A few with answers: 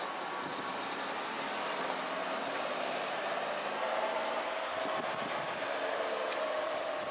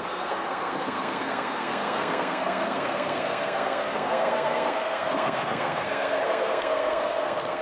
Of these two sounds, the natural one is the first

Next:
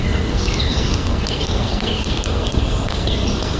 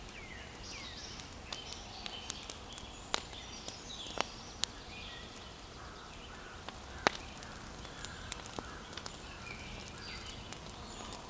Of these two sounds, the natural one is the second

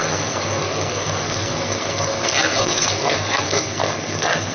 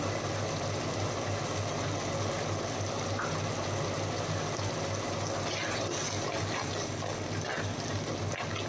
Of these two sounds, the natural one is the second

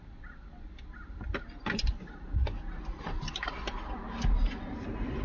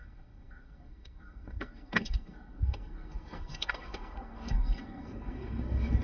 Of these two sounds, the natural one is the first